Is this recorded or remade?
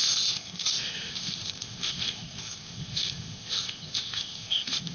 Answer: remade